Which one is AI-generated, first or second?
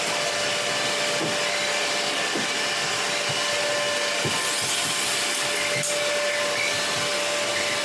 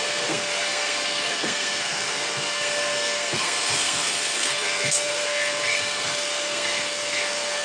second